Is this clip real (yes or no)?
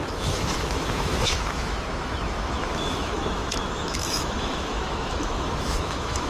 no